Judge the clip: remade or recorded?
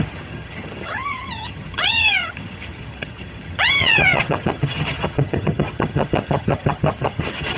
remade